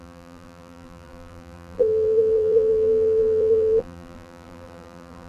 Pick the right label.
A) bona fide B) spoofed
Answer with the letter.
B